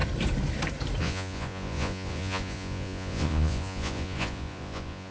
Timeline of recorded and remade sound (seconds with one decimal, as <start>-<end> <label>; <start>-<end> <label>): 0.0-1.0 recorded; 1.0-5.1 remade